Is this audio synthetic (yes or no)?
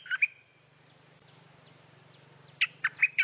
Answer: no